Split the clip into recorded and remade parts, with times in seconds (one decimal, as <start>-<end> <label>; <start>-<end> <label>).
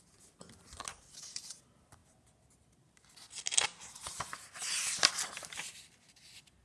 0.0-6.6 recorded